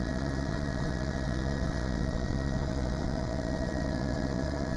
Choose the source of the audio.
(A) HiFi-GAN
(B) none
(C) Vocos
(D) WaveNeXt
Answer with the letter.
D